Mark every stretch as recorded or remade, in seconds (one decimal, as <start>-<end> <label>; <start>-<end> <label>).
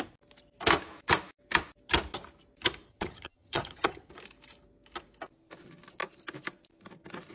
0.0-2.9 recorded; 2.9-4.1 remade; 4.1-7.3 recorded